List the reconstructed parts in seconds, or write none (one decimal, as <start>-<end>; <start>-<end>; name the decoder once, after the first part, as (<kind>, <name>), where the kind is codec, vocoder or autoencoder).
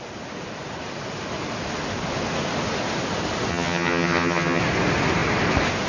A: 3.5-4.6 (vocoder, HiFi-GAN)